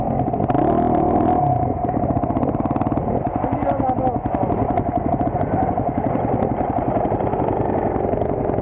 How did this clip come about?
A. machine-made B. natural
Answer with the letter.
B